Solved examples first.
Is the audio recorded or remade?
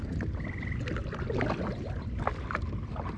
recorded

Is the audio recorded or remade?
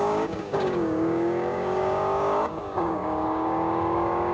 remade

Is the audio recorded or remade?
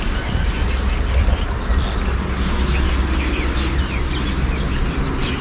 recorded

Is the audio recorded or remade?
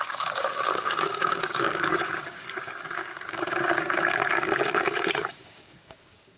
remade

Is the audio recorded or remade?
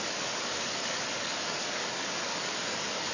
remade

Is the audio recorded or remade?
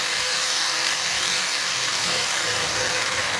remade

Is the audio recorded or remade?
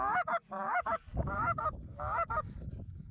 remade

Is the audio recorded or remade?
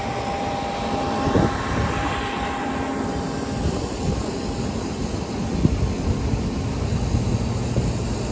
recorded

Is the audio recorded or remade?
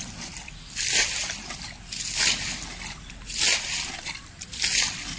recorded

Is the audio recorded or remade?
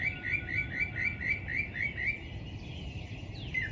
recorded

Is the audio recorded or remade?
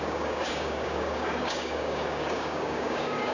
remade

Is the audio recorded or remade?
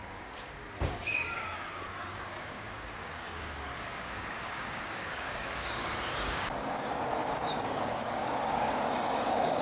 remade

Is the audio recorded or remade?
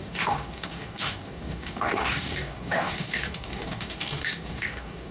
remade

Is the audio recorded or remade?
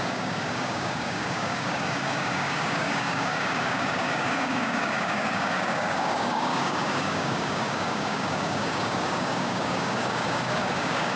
remade